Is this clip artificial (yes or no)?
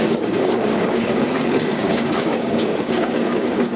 yes